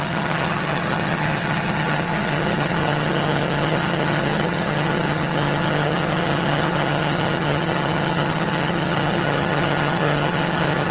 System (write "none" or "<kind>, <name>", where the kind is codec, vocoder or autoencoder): vocoder, HiFi-GAN